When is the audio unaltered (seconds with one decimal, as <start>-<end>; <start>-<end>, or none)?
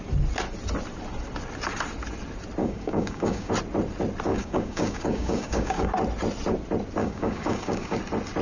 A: 0.0-2.6; 3.5-4.3; 5.9-7.0; 8.0-8.4